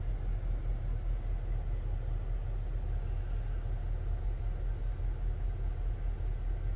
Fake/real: real